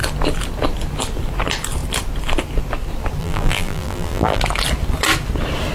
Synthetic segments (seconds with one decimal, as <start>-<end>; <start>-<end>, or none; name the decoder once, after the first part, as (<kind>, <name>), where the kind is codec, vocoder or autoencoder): 3.2-4.4 (vocoder, BigVGAN v2)